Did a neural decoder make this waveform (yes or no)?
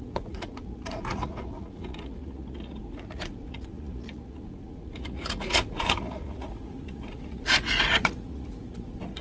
yes